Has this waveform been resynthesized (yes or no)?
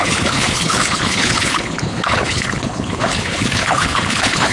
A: yes